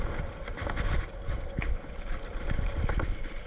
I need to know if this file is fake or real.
fake